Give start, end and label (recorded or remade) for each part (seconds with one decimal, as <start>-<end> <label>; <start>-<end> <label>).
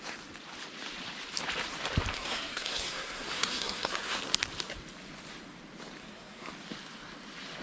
0.0-2.1 recorded; 2.1-4.2 remade; 4.2-6.0 recorded; 6.0-6.5 remade; 6.5-7.6 recorded